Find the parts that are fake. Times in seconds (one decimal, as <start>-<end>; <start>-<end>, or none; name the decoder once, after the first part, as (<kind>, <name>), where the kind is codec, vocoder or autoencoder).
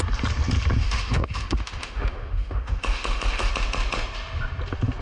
0.8-3.5 (autoencoder, DAC-VAE)